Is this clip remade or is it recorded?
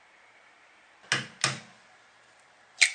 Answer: recorded